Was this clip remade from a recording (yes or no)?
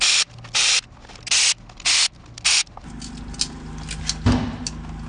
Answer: no